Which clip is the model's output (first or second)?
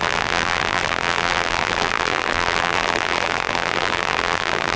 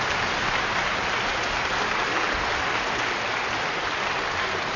first